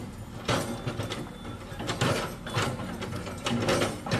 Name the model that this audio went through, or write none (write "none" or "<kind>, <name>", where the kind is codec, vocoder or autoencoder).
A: none